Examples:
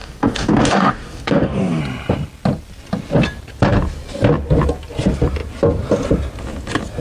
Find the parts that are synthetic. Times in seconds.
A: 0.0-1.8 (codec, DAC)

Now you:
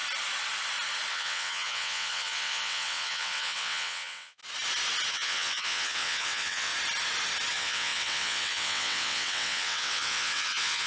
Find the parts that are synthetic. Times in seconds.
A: 1.1-4.4 (vocoder, WaveNeXt); 5.1-6.7; 7.5-10.9

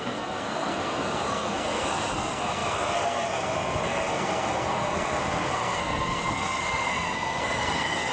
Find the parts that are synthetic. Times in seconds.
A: 0.0-8.1 (codec, SNAC)

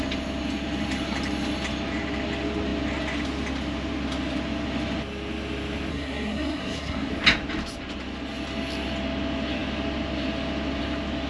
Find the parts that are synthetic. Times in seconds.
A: 5.9-7.1 (codec, SNAC)

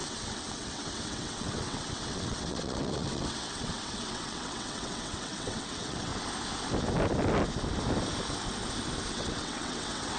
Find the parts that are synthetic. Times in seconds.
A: 0.0-6.1 (vocoder, WaveNeXt); 9.1-10.2

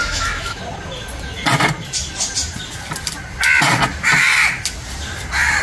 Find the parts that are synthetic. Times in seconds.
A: 0.0-0.6 (autoencoder, DAC-VAE)

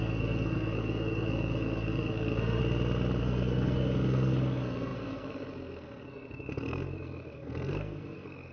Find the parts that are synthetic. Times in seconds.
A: 0.0-2.6 (codec, SNAC); 3.2-8.5

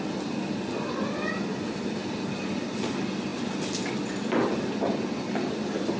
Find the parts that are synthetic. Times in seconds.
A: none